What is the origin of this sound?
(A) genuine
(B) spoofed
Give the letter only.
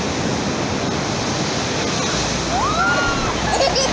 A